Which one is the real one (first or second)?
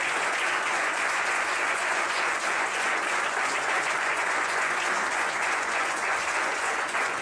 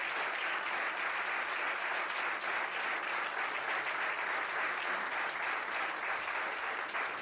second